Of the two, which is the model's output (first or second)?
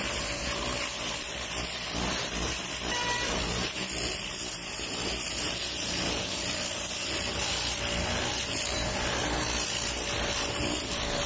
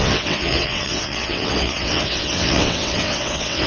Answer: second